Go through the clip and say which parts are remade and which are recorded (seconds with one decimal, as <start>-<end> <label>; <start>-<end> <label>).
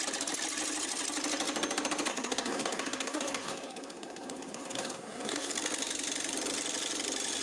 0.0-2.1 recorded; 2.1-5.5 remade; 5.5-7.4 recorded